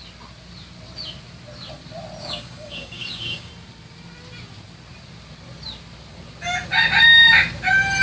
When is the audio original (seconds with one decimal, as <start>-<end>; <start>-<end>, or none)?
0.0-2.2; 3.5-8.0